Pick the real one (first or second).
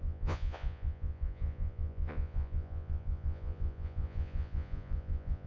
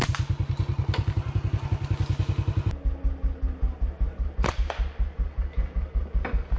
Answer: second